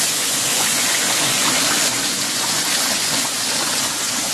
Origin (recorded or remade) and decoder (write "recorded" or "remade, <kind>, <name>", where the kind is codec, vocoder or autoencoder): remade, vocoder, Vocos